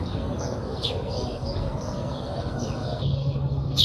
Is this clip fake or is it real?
fake